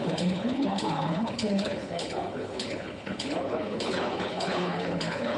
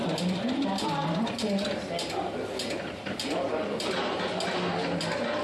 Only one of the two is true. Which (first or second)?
second